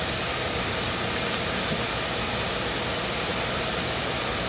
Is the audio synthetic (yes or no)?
no